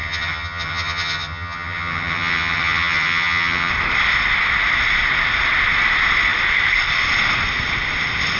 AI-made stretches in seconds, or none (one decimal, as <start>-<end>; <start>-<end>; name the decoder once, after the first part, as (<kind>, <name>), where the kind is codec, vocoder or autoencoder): 0.0-3.7 (vocoder, HiFi-GAN)